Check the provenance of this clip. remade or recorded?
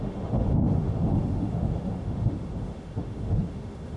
remade